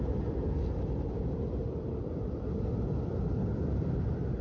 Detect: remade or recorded recorded